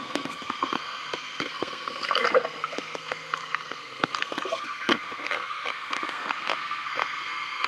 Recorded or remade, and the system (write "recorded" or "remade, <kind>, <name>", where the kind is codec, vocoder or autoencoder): remade, codec, SNAC